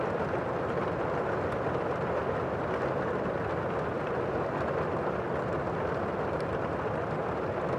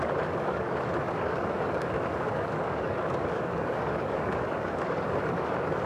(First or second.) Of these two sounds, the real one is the first